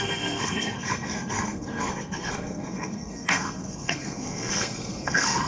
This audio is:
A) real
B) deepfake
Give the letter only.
B